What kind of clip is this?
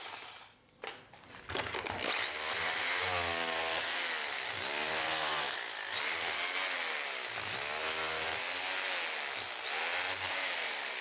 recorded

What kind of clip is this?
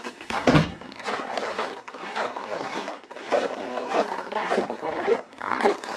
remade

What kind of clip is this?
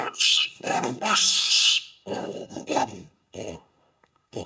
remade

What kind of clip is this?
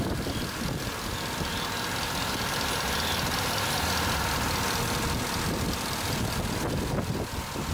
recorded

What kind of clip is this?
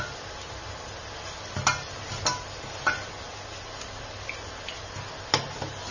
recorded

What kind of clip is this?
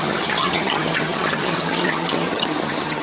remade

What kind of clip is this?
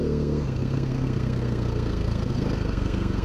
remade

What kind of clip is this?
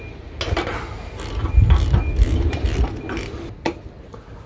recorded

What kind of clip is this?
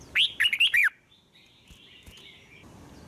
recorded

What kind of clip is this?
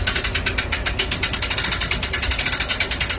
recorded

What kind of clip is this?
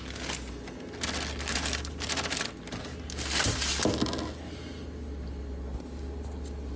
recorded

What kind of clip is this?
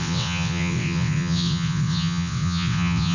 remade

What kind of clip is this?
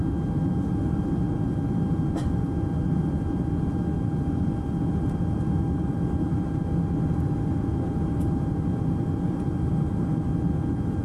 recorded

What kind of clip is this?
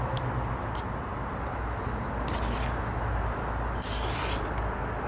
recorded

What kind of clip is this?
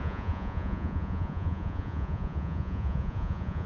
remade